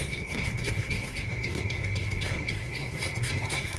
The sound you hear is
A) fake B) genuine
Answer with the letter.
A